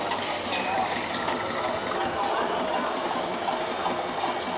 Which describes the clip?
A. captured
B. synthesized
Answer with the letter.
B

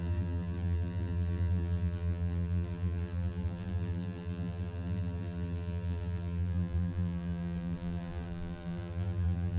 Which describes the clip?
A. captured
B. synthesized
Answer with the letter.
B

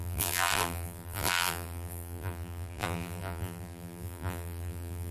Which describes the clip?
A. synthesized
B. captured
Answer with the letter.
A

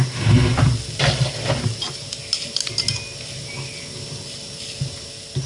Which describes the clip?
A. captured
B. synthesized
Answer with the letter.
A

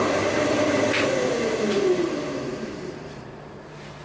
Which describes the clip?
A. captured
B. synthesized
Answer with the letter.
B